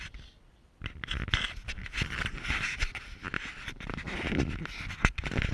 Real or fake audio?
real